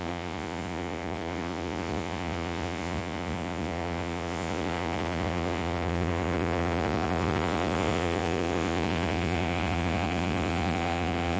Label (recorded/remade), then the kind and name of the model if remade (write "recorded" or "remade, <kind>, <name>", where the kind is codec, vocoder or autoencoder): remade, vocoder, Vocos